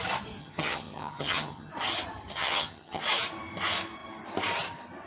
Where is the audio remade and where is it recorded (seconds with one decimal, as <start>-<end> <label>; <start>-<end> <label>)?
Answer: 0.0-0.4 recorded; 0.4-1.7 remade; 1.7-2.3 recorded; 2.3-3.0 remade; 3.0-5.1 recorded